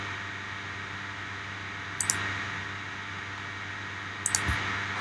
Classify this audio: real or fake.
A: real